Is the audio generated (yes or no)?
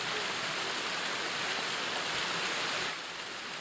no